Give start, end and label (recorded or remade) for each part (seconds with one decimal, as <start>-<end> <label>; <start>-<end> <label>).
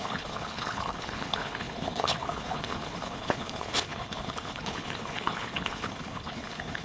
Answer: 0.0-6.8 remade